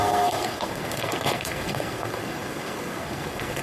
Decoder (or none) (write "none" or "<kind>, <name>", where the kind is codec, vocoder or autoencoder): codec, SNAC